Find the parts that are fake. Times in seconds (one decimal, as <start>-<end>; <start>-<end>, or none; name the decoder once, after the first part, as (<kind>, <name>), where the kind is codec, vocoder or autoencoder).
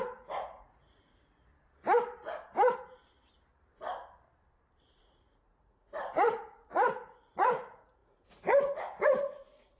0.0-1.5 (vocoder, Vocos); 5.0-9.8